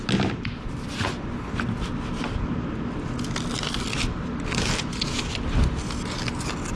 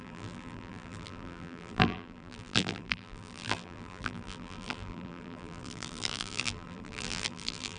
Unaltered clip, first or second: first